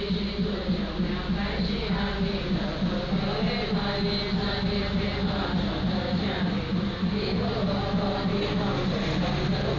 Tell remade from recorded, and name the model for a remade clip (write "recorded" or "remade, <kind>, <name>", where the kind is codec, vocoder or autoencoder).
recorded